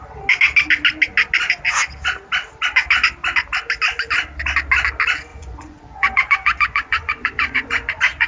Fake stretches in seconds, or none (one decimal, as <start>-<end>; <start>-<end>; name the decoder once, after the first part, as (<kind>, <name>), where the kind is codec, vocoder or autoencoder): 5.3-8.3 (vocoder, Vocos)